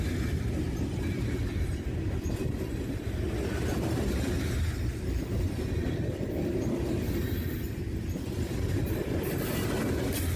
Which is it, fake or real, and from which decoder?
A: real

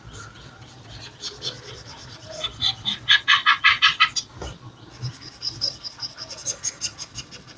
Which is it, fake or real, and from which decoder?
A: real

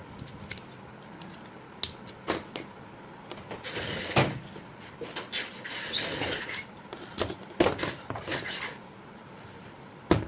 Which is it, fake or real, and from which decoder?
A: real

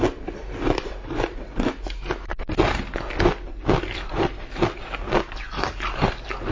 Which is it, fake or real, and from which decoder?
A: real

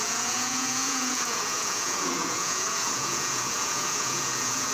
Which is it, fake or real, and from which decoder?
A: fake, vocoder, Vocos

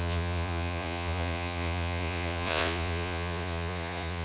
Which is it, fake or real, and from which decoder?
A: fake, vocoder, Vocos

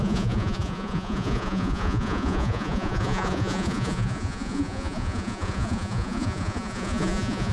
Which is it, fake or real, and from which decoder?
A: fake, vocoder, Vocos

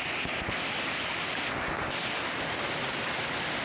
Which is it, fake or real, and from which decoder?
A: real